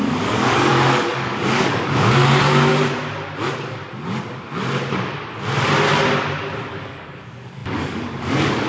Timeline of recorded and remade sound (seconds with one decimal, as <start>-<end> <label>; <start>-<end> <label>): 0.0-2.7 remade; 2.7-6.7 recorded; 6.7-8.7 remade